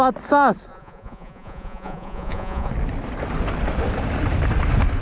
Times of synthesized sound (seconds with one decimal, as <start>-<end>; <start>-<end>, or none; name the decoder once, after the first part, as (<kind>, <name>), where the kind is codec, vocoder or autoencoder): 0.7-2.7 (vocoder, Vocos)